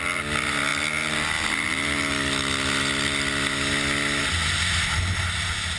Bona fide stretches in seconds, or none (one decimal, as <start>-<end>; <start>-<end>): 0.0-5.8